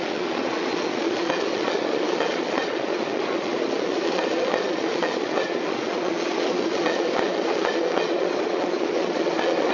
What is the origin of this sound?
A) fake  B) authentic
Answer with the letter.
A